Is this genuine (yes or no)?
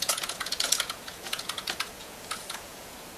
no